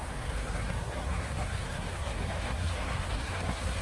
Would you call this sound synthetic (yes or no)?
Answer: yes